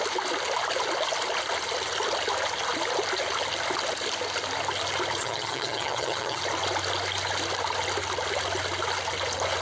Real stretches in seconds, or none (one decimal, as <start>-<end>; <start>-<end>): 0.0-5.2; 6.4-9.6